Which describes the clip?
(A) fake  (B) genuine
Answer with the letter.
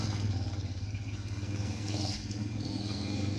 A